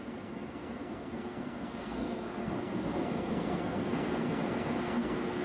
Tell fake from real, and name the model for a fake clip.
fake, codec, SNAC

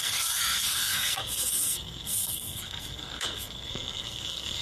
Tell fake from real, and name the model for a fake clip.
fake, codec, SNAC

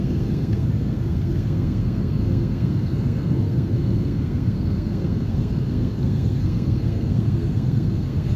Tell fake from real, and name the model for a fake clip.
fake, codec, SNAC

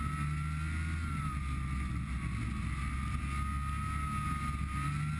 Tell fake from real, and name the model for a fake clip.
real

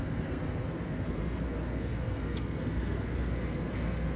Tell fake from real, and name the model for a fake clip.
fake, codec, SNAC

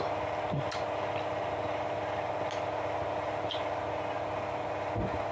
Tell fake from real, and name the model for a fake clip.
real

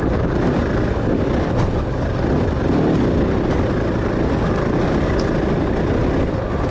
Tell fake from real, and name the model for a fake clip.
real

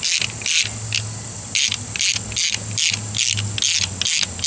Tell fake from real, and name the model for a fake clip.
real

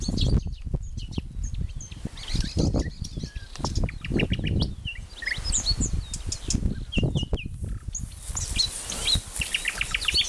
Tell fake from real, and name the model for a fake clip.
real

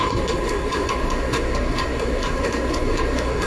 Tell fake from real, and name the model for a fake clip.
fake, codec, SNAC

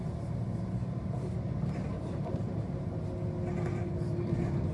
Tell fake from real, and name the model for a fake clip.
real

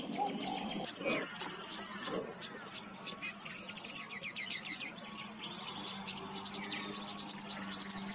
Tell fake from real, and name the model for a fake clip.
real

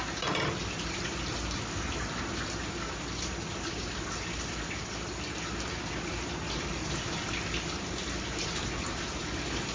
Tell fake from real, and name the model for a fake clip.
real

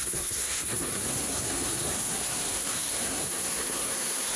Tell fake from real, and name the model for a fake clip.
fake, codec, SNAC